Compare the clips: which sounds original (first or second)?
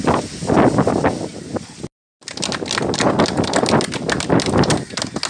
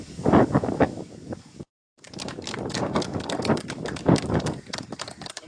first